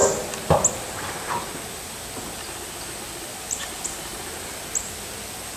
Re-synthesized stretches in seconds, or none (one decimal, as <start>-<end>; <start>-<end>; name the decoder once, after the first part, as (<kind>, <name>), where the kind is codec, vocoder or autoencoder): none